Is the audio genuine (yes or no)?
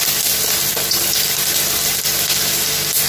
yes